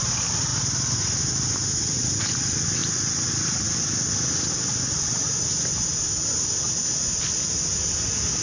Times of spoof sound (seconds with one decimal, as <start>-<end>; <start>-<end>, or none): none